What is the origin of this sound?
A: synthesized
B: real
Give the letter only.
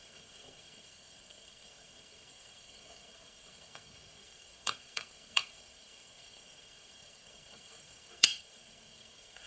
A